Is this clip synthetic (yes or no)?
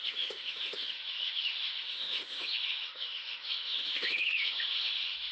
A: yes